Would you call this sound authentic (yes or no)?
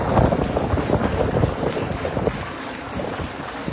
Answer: yes